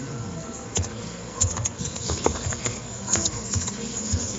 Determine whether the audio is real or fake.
fake